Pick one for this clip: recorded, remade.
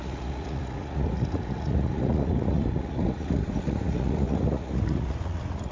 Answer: remade